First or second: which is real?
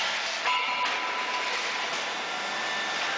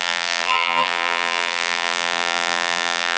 first